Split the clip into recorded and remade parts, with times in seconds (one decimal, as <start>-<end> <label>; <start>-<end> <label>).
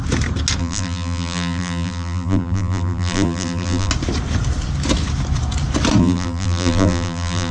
0.0-0.6 recorded; 0.6-3.9 remade; 3.9-6.0 recorded; 6.0-7.5 remade